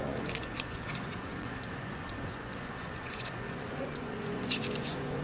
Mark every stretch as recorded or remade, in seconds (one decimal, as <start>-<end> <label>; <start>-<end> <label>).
0.0-5.2 remade